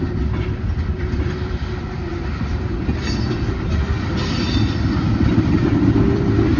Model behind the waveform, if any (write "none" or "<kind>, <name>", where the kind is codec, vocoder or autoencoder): vocoder, BigVGAN v2